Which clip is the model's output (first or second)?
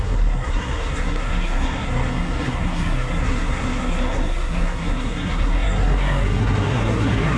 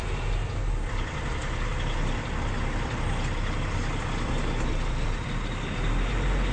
first